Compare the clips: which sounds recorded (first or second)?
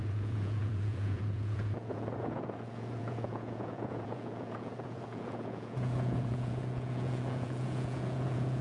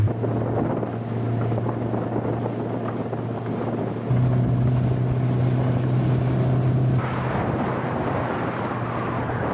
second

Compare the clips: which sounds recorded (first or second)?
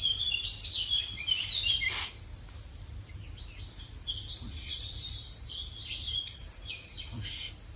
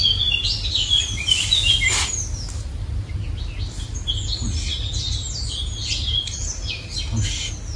second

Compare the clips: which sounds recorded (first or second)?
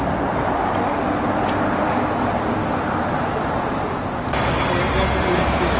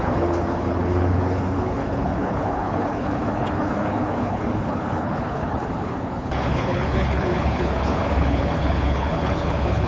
first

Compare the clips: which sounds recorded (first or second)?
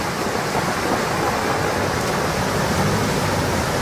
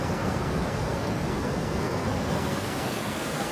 first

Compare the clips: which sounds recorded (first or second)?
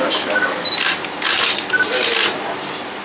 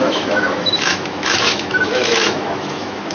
first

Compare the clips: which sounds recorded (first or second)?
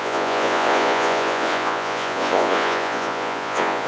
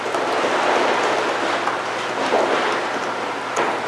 second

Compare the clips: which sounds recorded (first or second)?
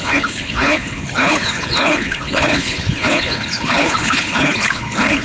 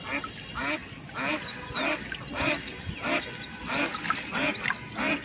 second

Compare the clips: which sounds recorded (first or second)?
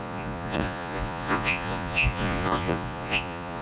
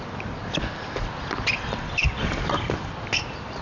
second